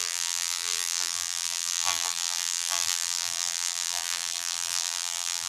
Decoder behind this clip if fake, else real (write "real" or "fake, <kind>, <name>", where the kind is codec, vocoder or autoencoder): fake, vocoder, BigVGAN v2